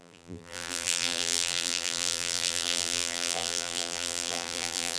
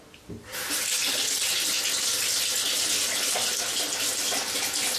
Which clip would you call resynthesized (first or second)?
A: first